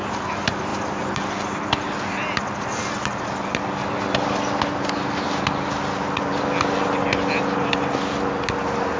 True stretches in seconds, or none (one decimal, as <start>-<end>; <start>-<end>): 0.0-9.0